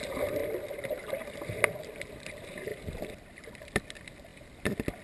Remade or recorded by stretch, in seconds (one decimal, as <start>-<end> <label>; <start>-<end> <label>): 0.0-2.7 recorded; 2.7-3.4 remade; 3.4-4.3 recorded; 4.3-5.0 remade